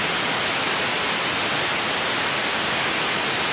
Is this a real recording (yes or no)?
yes